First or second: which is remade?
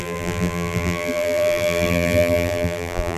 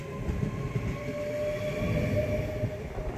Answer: first